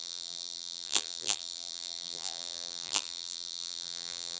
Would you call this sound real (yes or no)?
no